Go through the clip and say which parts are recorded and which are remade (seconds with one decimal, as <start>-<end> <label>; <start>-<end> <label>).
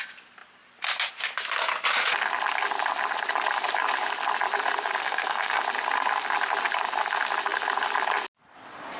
0.0-5.0 recorded; 5.0-5.6 remade; 5.6-9.0 recorded